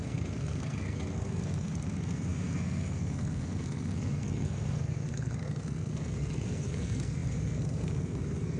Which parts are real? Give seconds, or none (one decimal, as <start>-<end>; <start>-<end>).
none